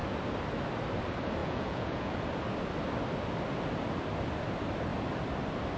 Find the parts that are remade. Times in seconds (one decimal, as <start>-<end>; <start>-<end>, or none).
1.4-2.2